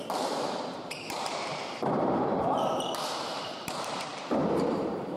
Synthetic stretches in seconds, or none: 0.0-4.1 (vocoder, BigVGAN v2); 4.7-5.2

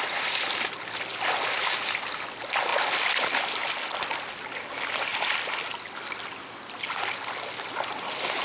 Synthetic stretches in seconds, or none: 2.7-4.1 (vocoder, BigVGAN v2); 5.1-6.2

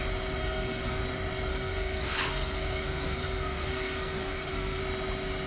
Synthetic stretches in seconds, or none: 0.4-1.0 (codec, SNAC); 1.5-4.8